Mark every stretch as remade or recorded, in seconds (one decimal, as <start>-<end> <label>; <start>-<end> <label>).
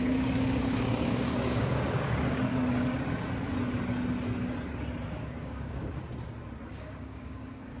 0.0-2.5 remade; 2.5-5.1 recorded; 5.1-6.0 remade; 6.0-6.7 recorded; 6.7-7.8 remade